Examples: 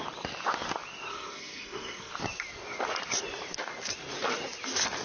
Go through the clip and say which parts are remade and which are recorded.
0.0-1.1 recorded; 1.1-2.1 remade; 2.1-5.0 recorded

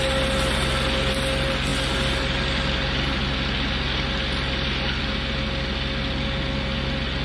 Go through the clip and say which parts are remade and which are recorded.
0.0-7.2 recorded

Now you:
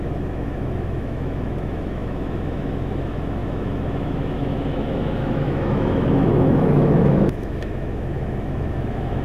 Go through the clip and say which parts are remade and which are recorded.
0.0-9.2 remade

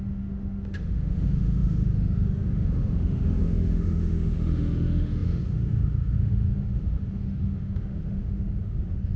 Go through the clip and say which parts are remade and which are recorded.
0.0-9.2 remade